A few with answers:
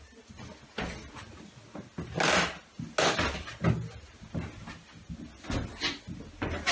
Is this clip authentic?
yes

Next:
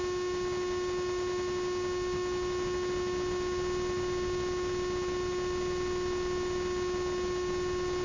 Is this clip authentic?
yes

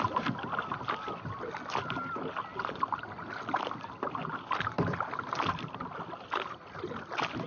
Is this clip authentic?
yes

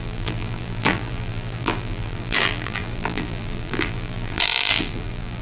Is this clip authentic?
no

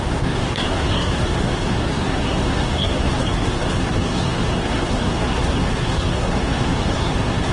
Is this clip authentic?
no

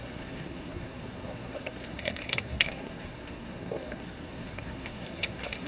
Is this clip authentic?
no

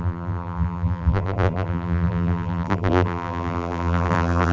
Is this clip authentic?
no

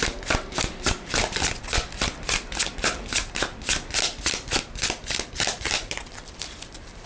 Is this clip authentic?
no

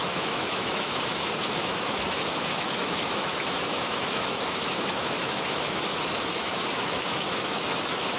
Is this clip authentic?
no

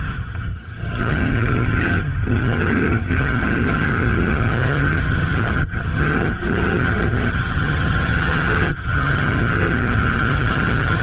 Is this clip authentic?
no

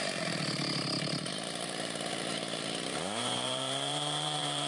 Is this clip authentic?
no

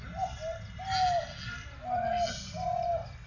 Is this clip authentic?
yes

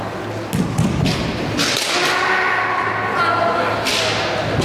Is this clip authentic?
yes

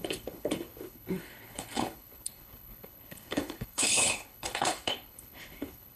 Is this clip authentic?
no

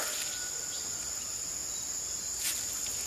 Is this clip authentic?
yes